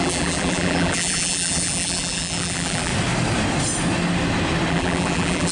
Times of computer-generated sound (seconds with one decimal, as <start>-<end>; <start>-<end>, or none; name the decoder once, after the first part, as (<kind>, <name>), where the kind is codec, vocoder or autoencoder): 0.0-2.9 (vocoder, BigVGAN v2); 4.7-5.5